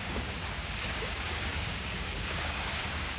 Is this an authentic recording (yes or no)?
no